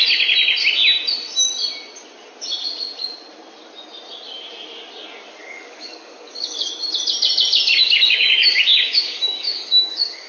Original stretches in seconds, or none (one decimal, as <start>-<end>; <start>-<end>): 0.0-5.4; 6.7-7.8